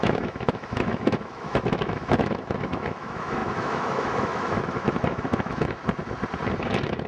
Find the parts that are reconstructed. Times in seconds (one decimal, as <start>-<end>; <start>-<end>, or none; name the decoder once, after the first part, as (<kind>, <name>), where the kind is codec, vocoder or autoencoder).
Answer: 0.0-5.8 (autoencoder, DAC-VAE); 6.6-7.1